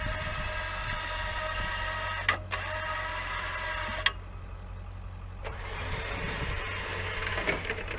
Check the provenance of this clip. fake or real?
real